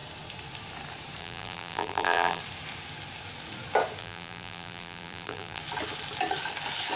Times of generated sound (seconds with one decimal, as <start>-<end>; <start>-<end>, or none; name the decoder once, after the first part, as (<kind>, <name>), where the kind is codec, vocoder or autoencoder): 1.2-2.4 (vocoder, BigVGAN v2); 4.0-5.6